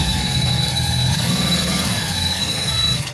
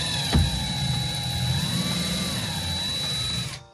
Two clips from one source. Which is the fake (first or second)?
first